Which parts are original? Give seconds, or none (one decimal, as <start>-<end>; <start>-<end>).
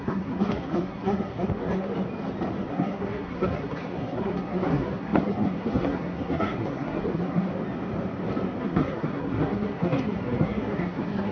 1.9-2.7; 7.5-8.6